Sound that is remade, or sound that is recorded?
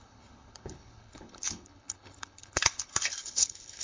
remade